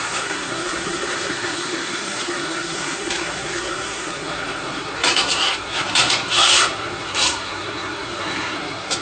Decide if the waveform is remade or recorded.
remade